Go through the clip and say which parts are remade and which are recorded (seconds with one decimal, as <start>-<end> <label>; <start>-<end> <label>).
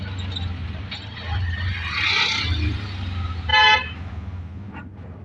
0.0-3.5 recorded; 3.5-4.1 remade; 4.1-5.2 recorded